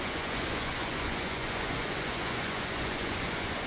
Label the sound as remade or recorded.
remade